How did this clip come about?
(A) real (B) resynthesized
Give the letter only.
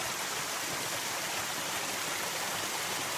A